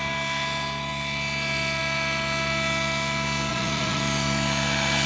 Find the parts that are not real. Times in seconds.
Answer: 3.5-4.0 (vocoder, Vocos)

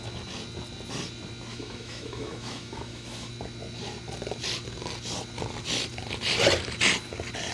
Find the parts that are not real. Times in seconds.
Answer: 1.5-3.3 (autoencoder, DAC-VAE)